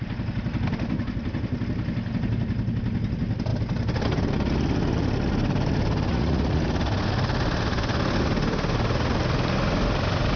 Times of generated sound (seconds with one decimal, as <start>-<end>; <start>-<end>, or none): 6.1-6.6